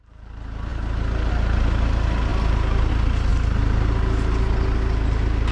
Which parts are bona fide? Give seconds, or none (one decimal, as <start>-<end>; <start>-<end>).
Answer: 0.0-2.3; 2.9-3.3